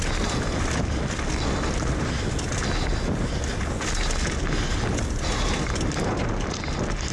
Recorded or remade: recorded